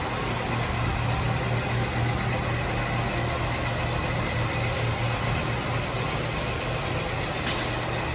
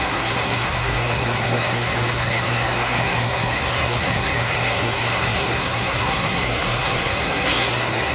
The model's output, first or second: second